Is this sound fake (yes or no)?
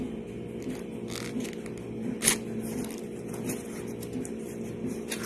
no